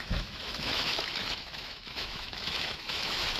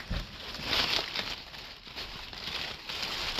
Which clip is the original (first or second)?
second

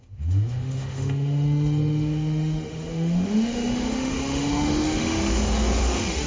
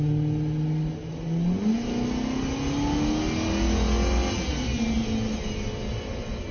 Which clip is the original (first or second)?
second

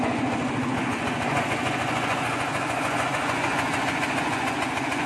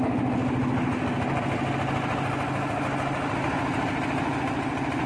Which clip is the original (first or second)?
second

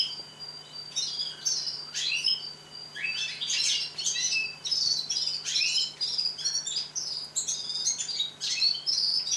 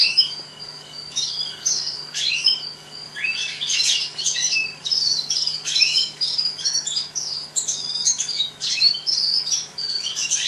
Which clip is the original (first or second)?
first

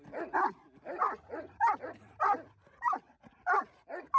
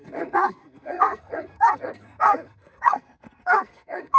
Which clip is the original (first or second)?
first